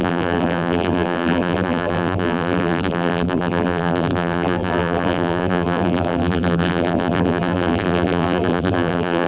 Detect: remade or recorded remade